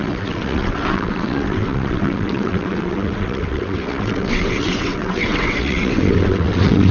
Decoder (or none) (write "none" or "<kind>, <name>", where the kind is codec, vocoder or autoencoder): vocoder, WaveNeXt